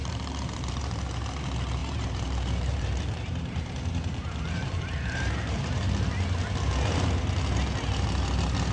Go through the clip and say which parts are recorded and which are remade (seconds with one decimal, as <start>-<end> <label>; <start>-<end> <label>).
0.0-0.7 remade; 0.7-1.8 recorded; 1.8-5.9 remade; 5.9-8.7 recorded